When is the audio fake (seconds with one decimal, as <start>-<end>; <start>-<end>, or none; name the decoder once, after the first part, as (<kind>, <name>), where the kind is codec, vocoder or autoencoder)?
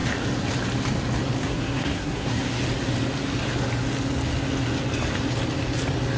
1.4-2.6 (codec, SNAC)